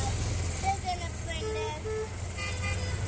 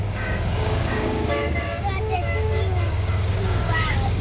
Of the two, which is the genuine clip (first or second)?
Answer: first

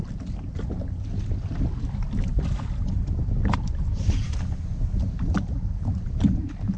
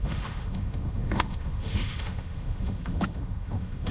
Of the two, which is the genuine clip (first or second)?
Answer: first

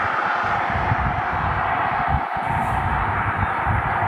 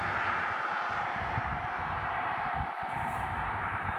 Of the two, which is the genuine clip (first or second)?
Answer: first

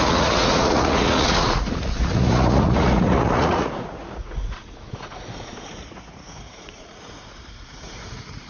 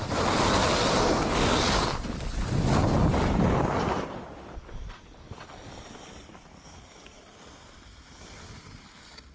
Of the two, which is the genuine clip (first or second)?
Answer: second